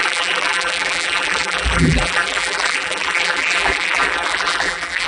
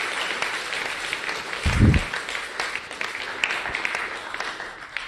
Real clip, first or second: second